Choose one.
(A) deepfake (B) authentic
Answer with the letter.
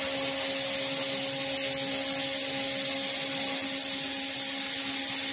B